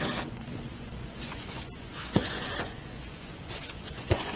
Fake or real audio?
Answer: fake